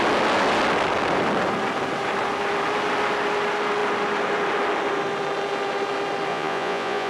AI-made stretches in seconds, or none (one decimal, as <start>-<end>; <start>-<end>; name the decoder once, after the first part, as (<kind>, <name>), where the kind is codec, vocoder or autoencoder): 6.3-7.1 (vocoder, Vocos)